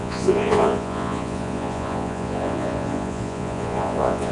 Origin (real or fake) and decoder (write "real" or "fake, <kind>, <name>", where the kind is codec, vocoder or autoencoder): fake, vocoder, Vocos